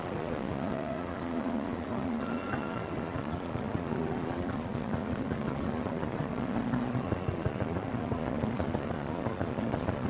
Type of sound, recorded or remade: remade